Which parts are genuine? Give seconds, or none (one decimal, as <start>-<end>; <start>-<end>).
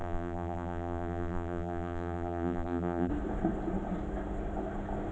3.1-5.1